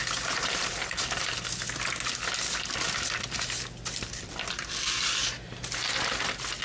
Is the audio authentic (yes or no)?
yes